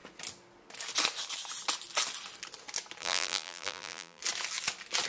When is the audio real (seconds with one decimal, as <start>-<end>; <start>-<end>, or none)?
0.0-3.0; 4.2-5.1